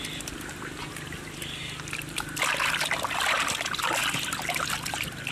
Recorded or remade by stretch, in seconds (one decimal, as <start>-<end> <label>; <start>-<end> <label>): 0.0-4.0 remade; 4.0-4.7 recorded; 4.7-5.3 remade